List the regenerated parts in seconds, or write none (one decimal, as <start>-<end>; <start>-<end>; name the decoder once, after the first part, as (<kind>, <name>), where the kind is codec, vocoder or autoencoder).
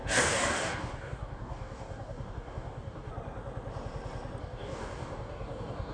0.0-3.1 (codec, DAC); 4.4-5.9